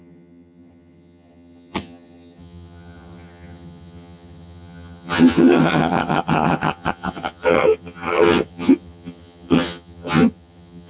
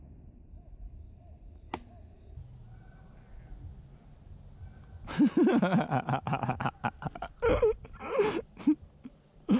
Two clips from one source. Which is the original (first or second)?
second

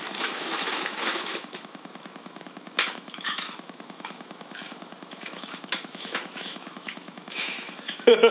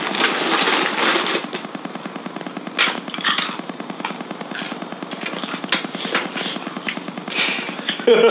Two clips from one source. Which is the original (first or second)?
second